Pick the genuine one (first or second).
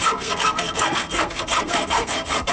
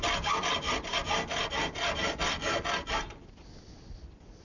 second